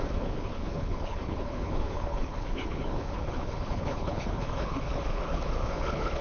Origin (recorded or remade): remade